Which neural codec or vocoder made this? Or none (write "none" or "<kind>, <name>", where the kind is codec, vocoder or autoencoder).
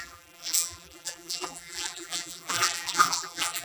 vocoder, BigVGAN v2